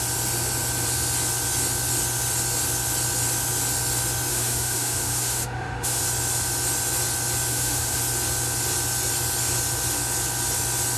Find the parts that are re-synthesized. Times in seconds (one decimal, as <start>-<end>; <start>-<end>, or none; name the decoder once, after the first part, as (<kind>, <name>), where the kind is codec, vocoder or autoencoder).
4.3-6.0 (autoencoder, DAC-VAE); 7.5-8.0